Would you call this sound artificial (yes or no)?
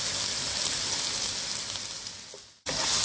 no